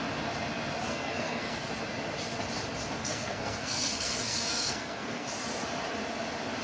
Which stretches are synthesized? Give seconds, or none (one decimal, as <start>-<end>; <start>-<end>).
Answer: 0.8-1.7; 3.0-5.3